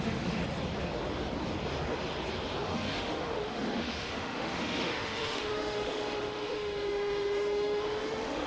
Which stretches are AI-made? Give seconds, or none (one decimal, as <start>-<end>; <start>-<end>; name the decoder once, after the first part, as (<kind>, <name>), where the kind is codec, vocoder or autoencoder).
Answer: 0.0-0.4 (autoencoder, DAC-VAE); 2.6-8.5